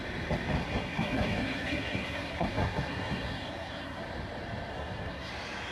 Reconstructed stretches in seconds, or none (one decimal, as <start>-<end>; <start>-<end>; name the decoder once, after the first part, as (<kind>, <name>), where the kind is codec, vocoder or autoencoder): 0.6-4.0 (codec, SNAC); 4.7-5.3